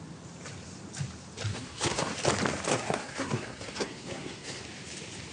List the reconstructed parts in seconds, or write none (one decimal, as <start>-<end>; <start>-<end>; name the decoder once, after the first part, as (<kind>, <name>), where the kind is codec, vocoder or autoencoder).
1.5-2.1 (codec, SNAC); 2.7-4.6